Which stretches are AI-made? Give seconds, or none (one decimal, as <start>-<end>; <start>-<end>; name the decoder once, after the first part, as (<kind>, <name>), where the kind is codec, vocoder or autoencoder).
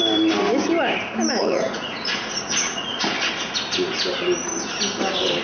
1.4-3.0 (vocoder, Vocos)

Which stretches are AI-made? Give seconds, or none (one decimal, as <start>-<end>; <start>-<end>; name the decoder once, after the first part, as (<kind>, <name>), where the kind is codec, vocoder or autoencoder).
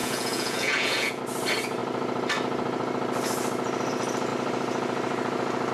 0.0-1.2 (vocoder, Vocos)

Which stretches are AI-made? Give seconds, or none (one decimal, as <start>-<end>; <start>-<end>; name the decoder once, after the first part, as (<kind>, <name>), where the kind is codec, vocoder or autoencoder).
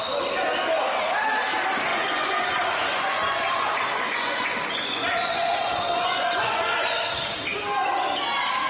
1.9-7.0 (vocoder, Vocos)